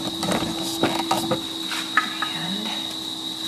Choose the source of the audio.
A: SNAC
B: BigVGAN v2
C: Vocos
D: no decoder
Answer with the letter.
D